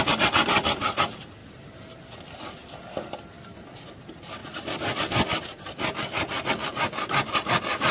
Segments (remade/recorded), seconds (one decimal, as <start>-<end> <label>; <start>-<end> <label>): 0.0-7.9 recorded